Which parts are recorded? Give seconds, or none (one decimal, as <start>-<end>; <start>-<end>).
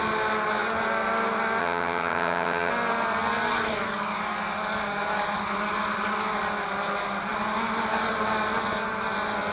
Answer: 0.0-1.6; 2.7-9.5